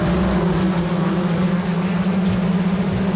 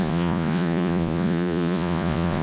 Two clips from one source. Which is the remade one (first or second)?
second